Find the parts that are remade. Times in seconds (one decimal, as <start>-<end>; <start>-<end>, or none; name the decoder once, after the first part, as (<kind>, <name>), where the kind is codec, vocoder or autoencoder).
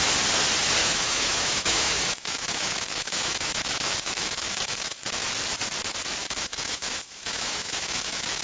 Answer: 0.8-5.3 (autoencoder, DAC-VAE); 6.2-8.4